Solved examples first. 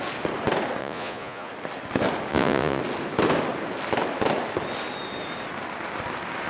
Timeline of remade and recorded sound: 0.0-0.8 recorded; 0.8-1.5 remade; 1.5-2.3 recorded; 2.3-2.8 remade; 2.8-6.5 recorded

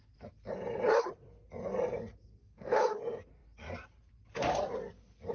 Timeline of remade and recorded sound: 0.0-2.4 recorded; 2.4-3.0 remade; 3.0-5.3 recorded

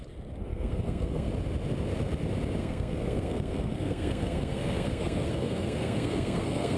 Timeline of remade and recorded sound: 0.0-0.5 recorded; 0.5-1.3 remade; 1.3-2.6 recorded; 2.6-6.8 remade

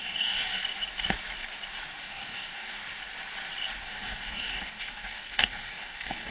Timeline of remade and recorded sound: 0.0-0.6 remade; 0.6-2.0 recorded; 2.0-2.8 remade; 2.8-3.8 recorded; 3.8-6.3 remade